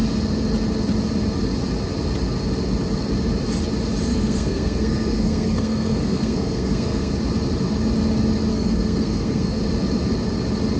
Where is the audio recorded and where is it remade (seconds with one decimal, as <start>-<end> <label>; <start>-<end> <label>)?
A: 0.0-4.1 recorded; 4.1-7.1 remade; 7.1-8.5 recorded; 8.5-9.6 remade; 9.6-10.8 recorded